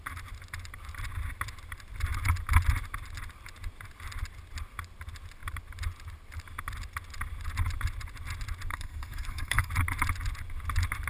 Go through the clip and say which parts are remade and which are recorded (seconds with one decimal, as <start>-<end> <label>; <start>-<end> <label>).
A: 0.0-8.7 recorded; 8.7-9.7 remade; 9.7-11.1 recorded